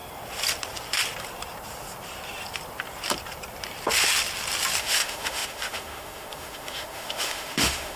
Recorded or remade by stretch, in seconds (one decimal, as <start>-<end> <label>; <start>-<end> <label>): 0.0-4.8 recorded; 4.8-8.0 remade